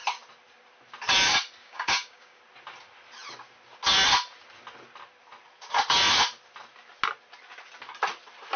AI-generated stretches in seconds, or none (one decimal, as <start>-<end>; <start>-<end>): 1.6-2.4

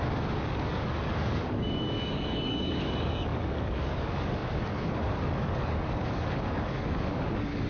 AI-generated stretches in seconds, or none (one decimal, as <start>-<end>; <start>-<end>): 0.0-7.7

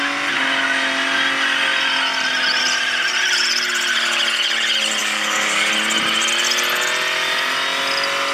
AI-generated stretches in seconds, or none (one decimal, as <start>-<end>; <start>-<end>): 5.0-5.7

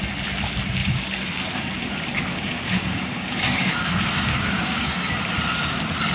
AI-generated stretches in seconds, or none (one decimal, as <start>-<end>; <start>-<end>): 0.8-3.8; 4.3-5.1

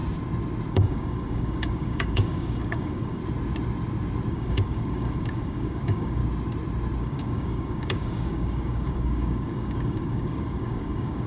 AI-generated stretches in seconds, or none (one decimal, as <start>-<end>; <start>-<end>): 0.7-3.2; 4.3-6.2; 7.0-11.3